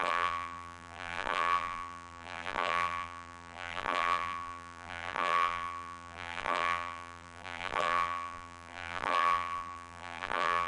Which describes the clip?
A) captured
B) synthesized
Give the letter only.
B